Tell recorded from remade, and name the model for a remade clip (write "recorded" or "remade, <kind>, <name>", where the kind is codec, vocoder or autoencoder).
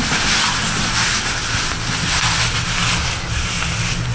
recorded